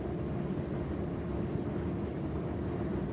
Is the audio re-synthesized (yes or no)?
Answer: no